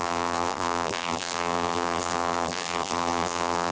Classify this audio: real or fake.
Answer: fake